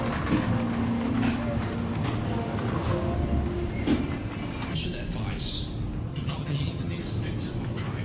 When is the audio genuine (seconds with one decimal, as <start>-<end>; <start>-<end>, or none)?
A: 0.0-6.1; 7.0-8.0